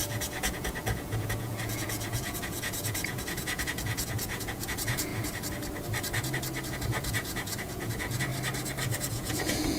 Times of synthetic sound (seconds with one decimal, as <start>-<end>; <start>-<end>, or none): 0.0-5.1; 6.7-8.3; 9.0-9.8

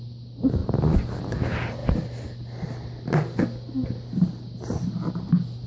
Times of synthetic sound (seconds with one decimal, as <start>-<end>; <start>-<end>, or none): none

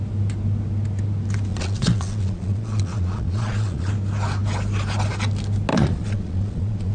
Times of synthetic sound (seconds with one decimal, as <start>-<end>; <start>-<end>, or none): 1.5-3.9; 5.7-6.9